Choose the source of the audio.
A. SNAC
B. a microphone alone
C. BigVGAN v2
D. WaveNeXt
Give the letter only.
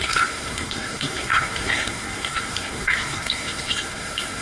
A